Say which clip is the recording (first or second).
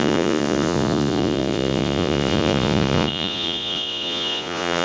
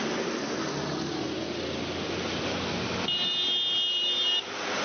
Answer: second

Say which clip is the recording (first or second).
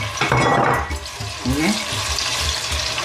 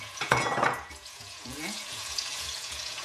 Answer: first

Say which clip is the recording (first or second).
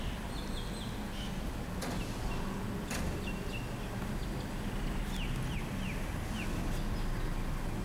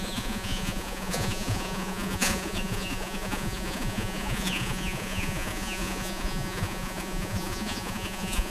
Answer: first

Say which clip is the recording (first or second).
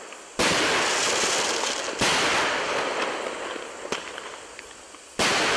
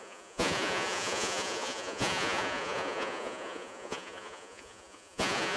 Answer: first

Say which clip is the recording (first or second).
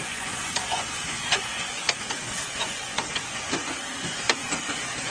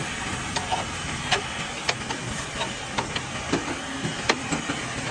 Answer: second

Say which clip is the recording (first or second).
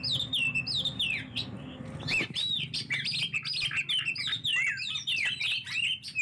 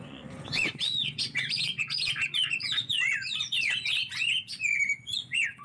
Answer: first